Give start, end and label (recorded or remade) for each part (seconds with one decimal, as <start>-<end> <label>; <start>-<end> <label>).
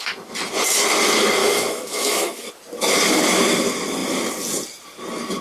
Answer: 0.0-1.4 recorded; 1.4-2.5 remade; 2.5-5.4 recorded